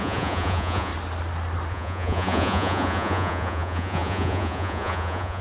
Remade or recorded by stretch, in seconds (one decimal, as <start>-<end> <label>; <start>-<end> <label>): 0.0-0.9 remade; 0.9-1.7 recorded; 1.7-5.4 remade

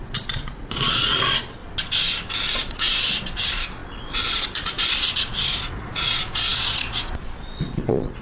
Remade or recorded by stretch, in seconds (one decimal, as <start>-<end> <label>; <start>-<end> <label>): 0.0-1.6 remade; 1.6-2.5 recorded; 2.5-8.2 remade

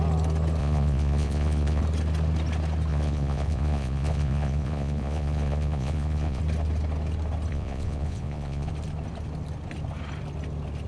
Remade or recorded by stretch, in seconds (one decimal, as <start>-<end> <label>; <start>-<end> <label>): 0.0-0.6 recorded; 0.6-1.8 remade; 1.8-2.9 recorded; 2.9-6.4 remade; 6.4-7.5 recorded; 7.5-8.7 remade; 8.7-10.9 recorded

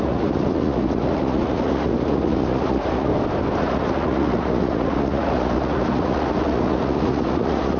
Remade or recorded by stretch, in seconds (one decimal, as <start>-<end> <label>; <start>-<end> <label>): 0.0-3.1 remade; 3.1-3.6 recorded; 3.6-7.8 remade